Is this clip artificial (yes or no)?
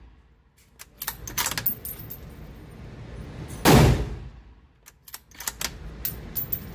no